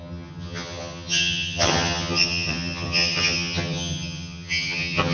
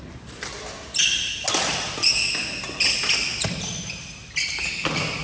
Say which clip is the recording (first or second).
second